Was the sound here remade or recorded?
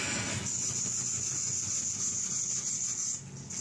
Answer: recorded